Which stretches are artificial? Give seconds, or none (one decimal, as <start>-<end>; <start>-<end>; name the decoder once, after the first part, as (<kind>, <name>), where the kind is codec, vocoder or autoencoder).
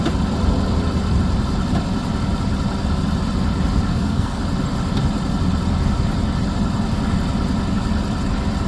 3.9-4.4 (codec, SNAC)